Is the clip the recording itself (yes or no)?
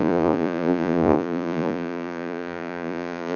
no